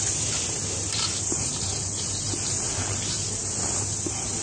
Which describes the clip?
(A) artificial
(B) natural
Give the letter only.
B